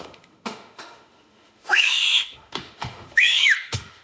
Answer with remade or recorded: remade